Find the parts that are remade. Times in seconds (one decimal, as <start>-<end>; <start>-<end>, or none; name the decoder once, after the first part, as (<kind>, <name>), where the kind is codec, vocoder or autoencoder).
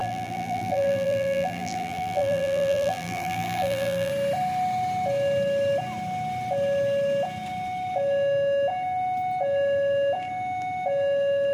0.0-4.1 (vocoder, BigVGAN v2)